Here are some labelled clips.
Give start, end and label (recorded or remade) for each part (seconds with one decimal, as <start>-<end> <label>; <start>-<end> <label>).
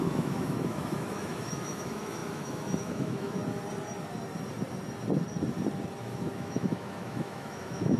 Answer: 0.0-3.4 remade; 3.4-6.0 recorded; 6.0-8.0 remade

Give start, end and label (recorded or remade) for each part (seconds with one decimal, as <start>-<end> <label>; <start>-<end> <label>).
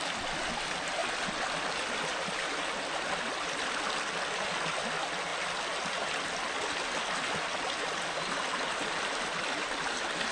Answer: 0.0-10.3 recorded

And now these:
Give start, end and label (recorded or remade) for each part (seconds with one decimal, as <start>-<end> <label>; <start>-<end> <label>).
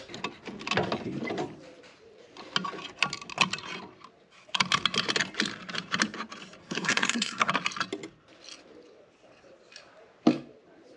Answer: 0.0-6.6 recorded; 6.6-7.5 remade; 7.5-11.0 recorded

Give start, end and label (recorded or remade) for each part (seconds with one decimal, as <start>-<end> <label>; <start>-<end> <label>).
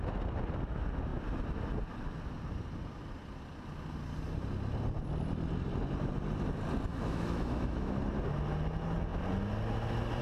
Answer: 0.0-6.9 recorded; 6.9-7.9 remade; 7.9-10.2 recorded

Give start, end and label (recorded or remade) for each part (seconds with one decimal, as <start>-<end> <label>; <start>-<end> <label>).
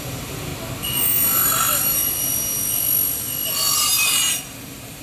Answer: 0.0-0.5 remade; 0.5-3.5 recorded; 3.5-5.0 remade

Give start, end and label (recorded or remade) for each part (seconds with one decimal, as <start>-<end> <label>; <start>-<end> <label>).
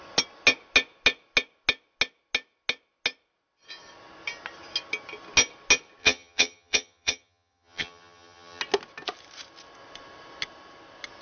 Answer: 0.0-6.0 recorded; 6.0-8.6 remade; 8.6-11.2 recorded